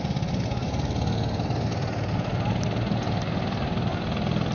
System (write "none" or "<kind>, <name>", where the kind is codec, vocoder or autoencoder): none